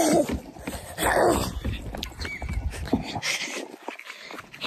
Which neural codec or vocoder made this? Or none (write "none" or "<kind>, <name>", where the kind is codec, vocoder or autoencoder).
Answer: none